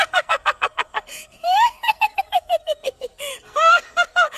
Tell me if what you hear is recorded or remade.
remade